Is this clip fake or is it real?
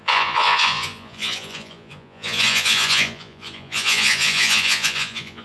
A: fake